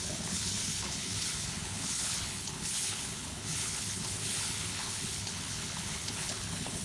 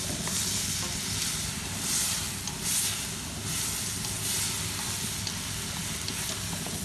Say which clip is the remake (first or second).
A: first